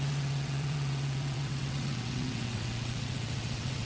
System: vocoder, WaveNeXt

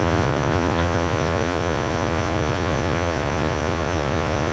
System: vocoder, Vocos